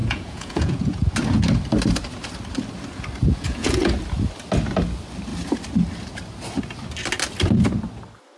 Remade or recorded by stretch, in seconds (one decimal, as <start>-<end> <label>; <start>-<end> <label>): 0.0-1.1 remade; 1.1-3.2 recorded; 3.2-3.9 remade; 3.9-8.4 recorded